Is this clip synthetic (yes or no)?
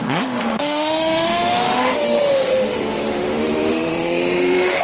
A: yes